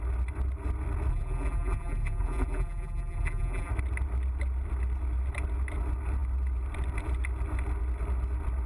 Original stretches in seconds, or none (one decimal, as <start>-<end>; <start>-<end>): 0.0-1.1; 3.7-8.7